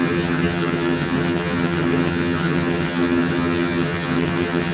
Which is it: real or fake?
fake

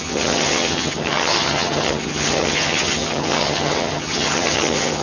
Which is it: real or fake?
fake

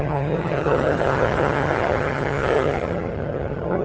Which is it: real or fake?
fake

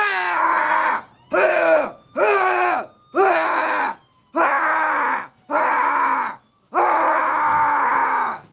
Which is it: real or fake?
real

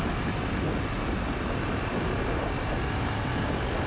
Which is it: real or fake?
real